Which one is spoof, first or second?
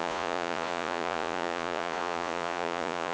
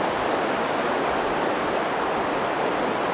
first